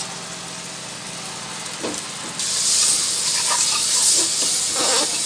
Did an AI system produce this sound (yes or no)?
no